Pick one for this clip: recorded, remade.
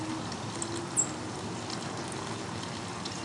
recorded